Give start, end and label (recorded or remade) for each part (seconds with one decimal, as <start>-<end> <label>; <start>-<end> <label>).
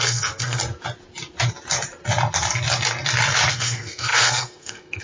0.0-0.6 remade; 0.6-3.5 recorded; 3.5-5.0 remade